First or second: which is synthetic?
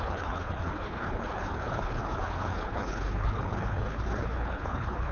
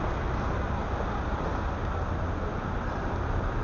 first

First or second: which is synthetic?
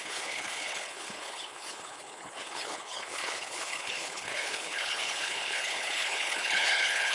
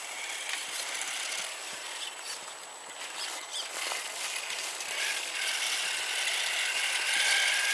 first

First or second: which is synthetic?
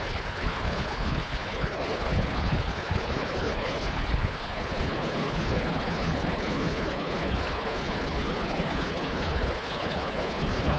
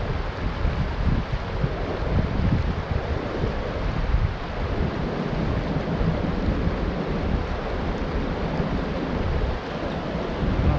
first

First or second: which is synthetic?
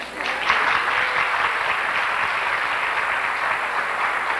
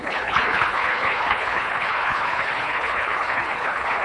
second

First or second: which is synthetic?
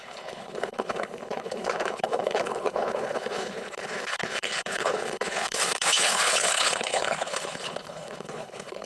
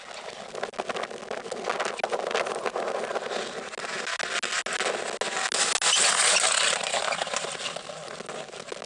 first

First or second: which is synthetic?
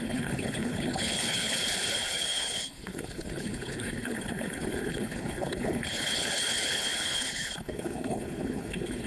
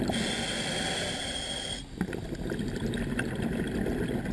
first